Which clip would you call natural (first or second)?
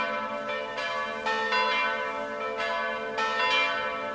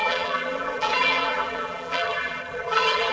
first